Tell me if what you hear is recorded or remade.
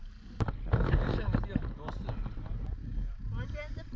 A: recorded